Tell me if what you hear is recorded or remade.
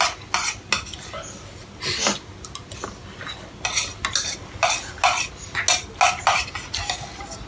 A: recorded